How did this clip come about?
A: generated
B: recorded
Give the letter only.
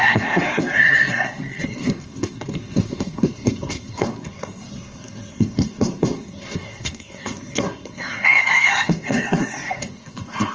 A